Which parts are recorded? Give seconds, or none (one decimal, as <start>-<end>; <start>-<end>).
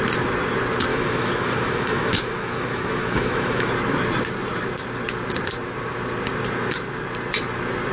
0.0-0.9; 3.7-7.9